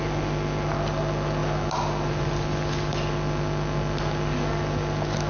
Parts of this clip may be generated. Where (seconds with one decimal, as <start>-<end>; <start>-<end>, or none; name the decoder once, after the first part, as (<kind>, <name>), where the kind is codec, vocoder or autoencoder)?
none

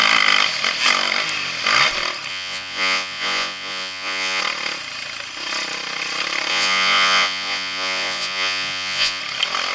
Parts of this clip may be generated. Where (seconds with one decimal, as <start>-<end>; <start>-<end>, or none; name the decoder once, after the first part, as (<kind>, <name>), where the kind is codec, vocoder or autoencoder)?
2.3-4.4 (vocoder, Vocos); 6.5-9.2

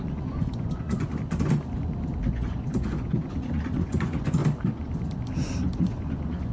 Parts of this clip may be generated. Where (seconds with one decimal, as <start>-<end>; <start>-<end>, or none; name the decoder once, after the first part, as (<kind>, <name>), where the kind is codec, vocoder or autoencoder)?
0.0-1.1 (vocoder, Vocos); 2.3-4.4; 5.8-6.5

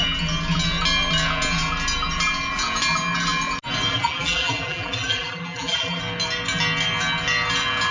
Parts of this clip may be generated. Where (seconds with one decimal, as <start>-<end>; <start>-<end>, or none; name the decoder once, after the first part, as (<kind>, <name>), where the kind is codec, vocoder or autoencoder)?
3.9-6.0 (vocoder, BigVGAN v2)

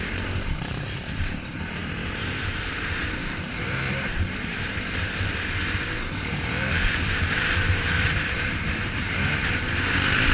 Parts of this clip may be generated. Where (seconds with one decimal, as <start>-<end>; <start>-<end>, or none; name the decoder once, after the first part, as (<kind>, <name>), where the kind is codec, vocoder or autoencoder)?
0.0-10.3 (vocoder, BigVGAN v2)

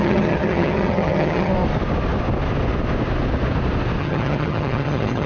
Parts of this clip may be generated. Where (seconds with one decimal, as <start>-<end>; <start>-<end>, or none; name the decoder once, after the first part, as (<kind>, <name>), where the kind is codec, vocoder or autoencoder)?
0.0-1.5 (vocoder, HiFi-GAN); 4.0-5.3

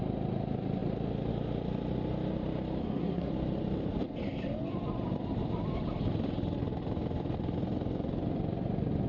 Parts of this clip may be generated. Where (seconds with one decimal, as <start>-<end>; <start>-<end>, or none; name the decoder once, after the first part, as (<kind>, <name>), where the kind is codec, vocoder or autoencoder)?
2.8-3.3 (codec, SNAC)